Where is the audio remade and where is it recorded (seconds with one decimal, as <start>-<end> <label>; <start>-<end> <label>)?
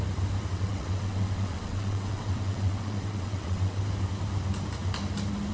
0.0-0.5 recorded; 0.5-3.8 remade; 3.8-5.5 recorded